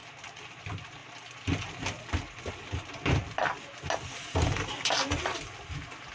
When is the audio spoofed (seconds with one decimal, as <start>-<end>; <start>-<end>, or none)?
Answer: none